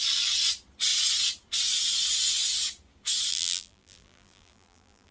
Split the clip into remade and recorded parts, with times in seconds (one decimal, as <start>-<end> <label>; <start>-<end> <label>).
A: 0.0-3.3 recorded; 3.3-5.1 remade